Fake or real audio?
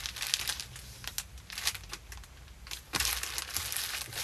real